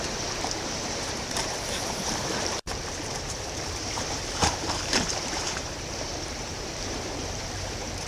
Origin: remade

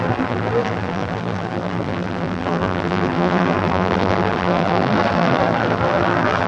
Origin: remade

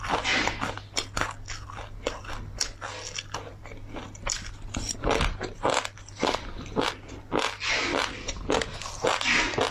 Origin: recorded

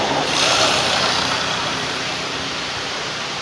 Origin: remade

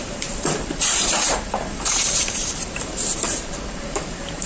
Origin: remade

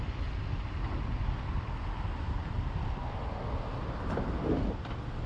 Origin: recorded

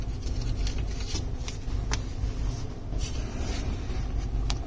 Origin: recorded